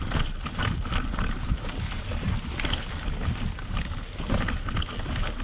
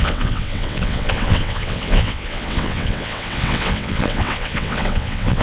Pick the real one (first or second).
first